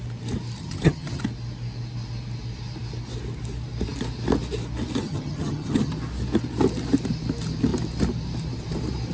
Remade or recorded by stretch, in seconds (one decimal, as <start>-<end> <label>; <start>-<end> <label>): 0.0-0.6 recorded; 0.6-1.2 remade; 1.2-5.0 recorded; 5.0-5.9 remade; 5.9-9.1 recorded